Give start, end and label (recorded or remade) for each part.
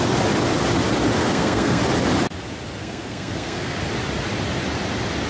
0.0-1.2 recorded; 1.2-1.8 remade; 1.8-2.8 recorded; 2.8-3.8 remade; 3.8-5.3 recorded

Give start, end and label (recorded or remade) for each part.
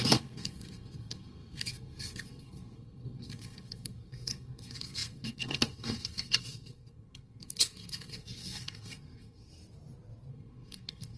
0.0-9.5 remade; 9.5-10.3 recorded; 10.3-11.2 remade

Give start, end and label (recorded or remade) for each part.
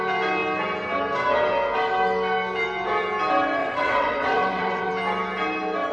0.0-3.6 recorded; 3.6-4.9 remade; 4.9-5.9 recorded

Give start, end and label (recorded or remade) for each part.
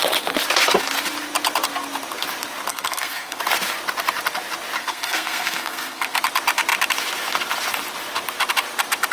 0.0-2.7 recorded; 2.7-3.4 remade; 3.4-4.8 recorded; 4.8-6.2 remade; 6.2-9.1 recorded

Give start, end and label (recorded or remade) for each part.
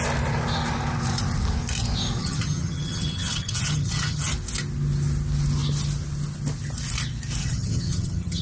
0.0-2.2 recorded; 2.2-4.3 remade; 4.3-7.4 recorded; 7.4-8.4 remade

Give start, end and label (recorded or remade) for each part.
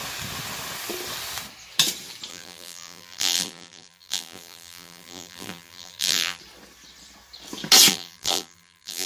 0.0-2.3 recorded; 2.3-6.4 remade; 6.4-7.9 recorded; 7.9-9.1 remade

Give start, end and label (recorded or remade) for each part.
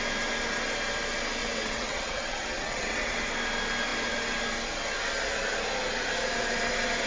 0.0-1.4 recorded; 1.4-3.1 remade; 3.1-7.1 recorded